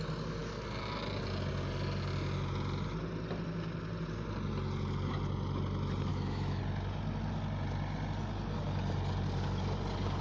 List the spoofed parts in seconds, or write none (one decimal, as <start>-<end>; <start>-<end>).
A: 6.1-6.6